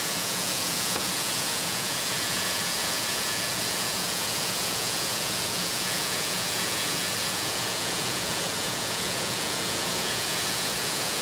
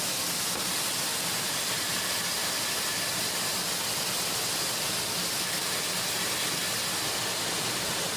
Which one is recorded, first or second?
second